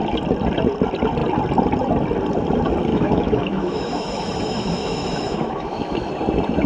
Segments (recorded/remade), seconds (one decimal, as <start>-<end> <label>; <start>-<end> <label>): 0.0-2.9 recorded; 2.9-6.1 remade; 6.1-6.7 recorded